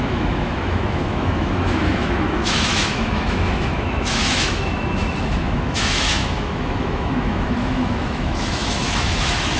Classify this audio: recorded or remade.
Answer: remade